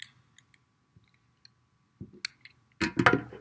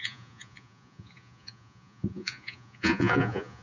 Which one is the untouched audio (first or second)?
first